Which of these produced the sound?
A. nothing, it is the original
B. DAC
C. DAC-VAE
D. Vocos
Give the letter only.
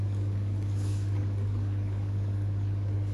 B